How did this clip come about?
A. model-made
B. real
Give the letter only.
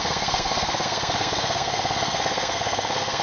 A